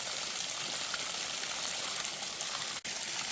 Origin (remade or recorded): recorded